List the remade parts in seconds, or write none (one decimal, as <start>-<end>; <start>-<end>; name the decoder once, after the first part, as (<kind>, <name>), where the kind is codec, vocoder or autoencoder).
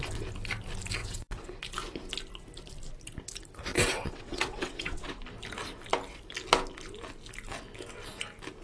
1.0-1.6 (vocoder, WaveNeXt); 3.7-5.2